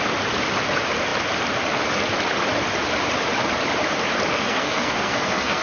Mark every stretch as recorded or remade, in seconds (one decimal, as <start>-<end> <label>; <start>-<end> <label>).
0.0-4.3 recorded; 4.3-5.6 remade